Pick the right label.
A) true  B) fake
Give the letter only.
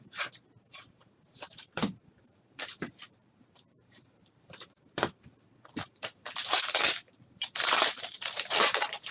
B